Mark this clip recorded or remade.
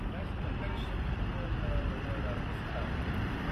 recorded